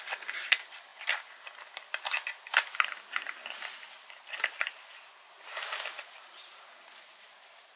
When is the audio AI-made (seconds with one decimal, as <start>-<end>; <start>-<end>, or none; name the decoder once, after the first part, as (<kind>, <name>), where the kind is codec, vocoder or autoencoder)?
none